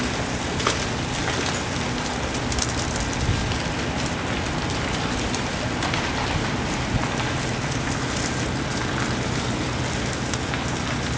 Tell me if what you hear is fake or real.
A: real